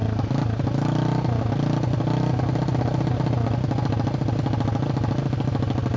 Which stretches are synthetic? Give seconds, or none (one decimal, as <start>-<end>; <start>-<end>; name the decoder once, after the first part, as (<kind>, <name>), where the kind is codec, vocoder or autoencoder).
none